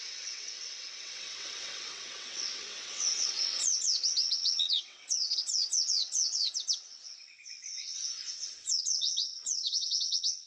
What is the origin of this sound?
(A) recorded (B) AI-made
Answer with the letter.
B